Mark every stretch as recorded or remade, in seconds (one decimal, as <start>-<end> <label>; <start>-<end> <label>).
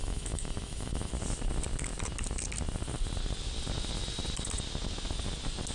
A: 0.0-1.1 remade; 1.1-5.7 recorded